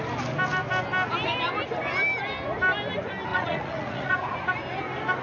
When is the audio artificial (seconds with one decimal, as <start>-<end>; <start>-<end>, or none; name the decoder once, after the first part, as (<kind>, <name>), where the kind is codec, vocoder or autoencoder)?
3.3-4.4 (vocoder, Vocos)